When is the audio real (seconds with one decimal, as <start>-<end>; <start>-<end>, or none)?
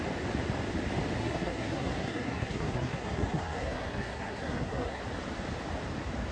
0.0-1.2; 5.0-6.3